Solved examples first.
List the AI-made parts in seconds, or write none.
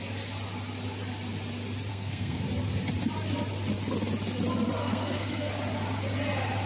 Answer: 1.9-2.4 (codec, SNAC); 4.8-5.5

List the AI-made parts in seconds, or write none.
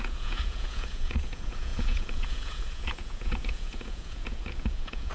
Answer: 0.0-5.1 (vocoder, Vocos)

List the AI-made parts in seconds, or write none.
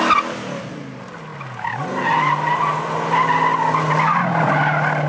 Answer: none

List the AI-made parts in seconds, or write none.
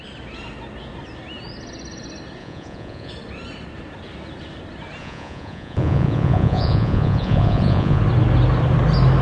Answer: 2.4-3.1 (vocoder, Vocos); 5.0-8.0